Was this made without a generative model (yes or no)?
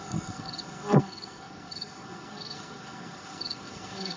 no